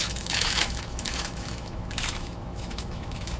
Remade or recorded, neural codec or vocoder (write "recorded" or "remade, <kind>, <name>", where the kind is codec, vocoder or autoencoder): remade, autoencoder, DAC-VAE